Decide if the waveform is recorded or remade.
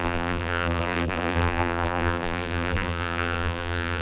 remade